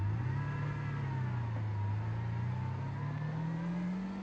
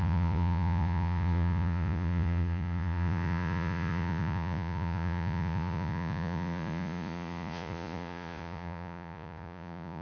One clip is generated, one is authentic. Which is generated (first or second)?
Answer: second